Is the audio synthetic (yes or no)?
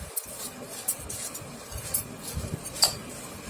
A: no